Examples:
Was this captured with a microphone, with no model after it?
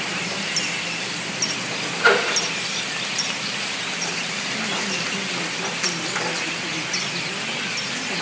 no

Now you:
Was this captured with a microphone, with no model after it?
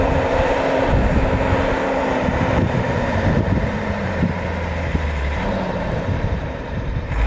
no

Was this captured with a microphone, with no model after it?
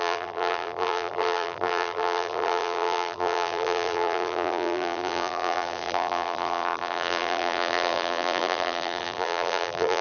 no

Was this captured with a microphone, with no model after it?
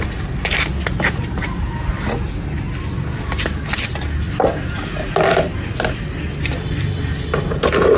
yes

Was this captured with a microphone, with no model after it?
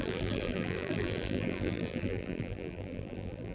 no